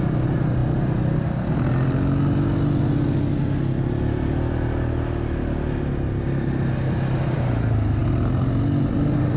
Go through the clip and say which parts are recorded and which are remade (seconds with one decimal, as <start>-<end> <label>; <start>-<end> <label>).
0.0-9.4 recorded